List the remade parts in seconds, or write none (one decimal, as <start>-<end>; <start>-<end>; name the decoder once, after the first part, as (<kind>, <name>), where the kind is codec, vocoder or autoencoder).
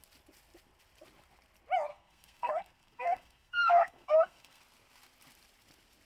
1.9-4.6 (codec, SNAC)